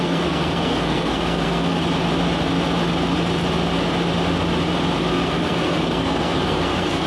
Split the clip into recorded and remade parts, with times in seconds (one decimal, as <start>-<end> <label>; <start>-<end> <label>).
0.0-1.8 remade; 1.8-5.1 recorded; 5.1-7.1 remade

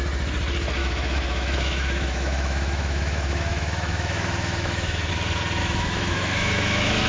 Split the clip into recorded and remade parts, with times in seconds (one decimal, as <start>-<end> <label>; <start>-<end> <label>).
0.0-0.8 recorded; 0.8-5.1 remade; 5.1-5.6 recorded; 5.6-7.1 remade

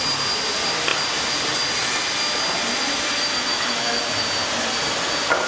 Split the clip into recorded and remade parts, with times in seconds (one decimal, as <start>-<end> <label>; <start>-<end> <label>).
0.0-3.5 recorded; 3.5-4.0 remade; 4.0-5.5 recorded

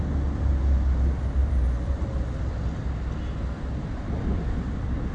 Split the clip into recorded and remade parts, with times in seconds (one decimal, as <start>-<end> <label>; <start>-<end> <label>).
0.0-5.1 recorded

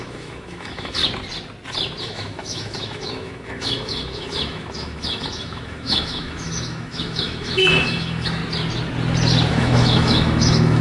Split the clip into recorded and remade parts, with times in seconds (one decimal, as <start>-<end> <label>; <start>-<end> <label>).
0.0-1.0 remade; 1.0-2.0 recorded; 2.0-8.4 remade; 8.4-9.5 recorded; 9.5-10.8 remade

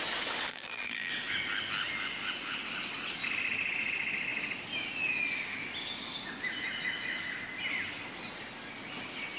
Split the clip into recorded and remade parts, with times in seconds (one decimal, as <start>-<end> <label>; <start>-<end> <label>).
0.0-0.5 recorded; 0.5-1.1 remade; 1.1-9.4 recorded

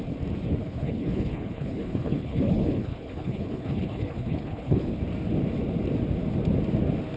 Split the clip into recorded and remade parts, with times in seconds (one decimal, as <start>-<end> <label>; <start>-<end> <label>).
0.0-0.6 recorded; 0.6-4.9 remade; 4.9-7.2 recorded

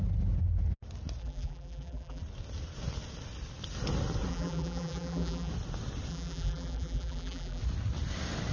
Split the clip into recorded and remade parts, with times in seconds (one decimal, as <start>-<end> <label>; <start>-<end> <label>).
0.0-1.2 recorded; 1.2-2.2 remade; 2.2-4.3 recorded; 4.3-5.5 remade; 5.5-6.1 recorded; 6.1-7.6 remade; 7.6-8.5 recorded